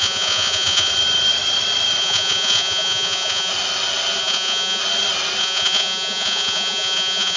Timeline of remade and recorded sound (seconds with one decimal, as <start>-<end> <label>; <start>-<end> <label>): 0.0-0.9 remade; 0.9-2.0 recorded; 2.0-3.5 remade; 3.5-4.2 recorded; 4.2-4.8 remade; 4.8-5.4 recorded; 5.4-7.4 remade